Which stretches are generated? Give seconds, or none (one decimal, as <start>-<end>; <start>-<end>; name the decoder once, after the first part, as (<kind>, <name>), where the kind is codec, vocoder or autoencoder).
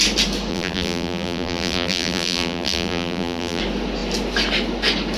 0.5-3.6 (vocoder, BigVGAN v2)